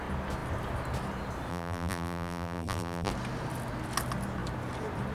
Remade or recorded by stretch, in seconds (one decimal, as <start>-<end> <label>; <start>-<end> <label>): 0.0-1.5 recorded; 1.5-3.1 remade; 3.1-5.1 recorded

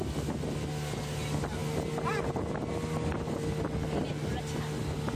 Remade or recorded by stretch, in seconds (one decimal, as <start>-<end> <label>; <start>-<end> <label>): 0.0-5.1 recorded

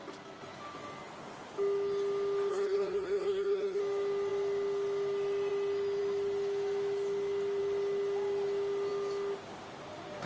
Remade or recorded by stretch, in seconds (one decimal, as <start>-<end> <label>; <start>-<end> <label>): 0.0-2.5 recorded; 2.5-3.8 remade; 3.8-10.3 recorded